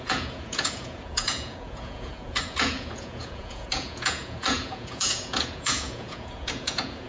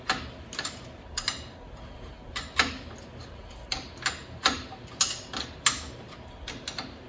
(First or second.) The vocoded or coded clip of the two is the first